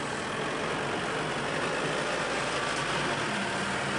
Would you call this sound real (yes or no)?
yes